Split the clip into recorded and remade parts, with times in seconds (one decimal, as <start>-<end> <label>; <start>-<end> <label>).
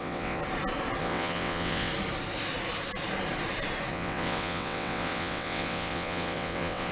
0.0-0.4 remade; 0.4-1.0 recorded; 1.0-1.9 remade; 1.9-3.9 recorded; 3.9-6.9 remade